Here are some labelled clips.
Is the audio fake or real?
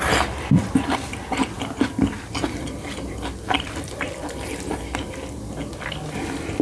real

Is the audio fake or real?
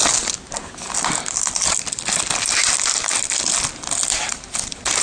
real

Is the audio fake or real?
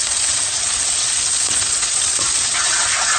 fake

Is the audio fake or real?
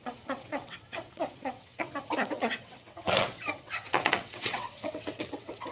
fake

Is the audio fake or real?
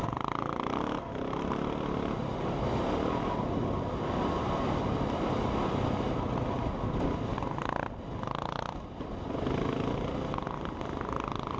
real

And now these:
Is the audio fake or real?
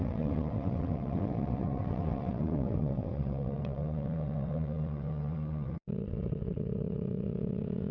fake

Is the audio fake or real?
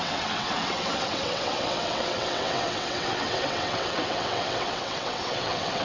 fake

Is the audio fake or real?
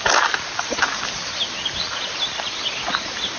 real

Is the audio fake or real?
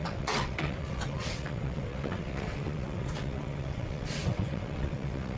fake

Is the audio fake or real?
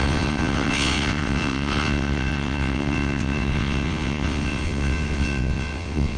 fake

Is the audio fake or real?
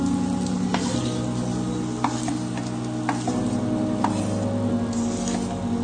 real